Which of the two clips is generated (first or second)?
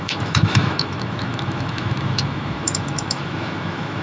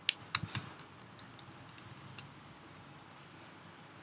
first